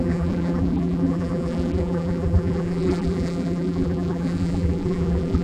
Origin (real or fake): fake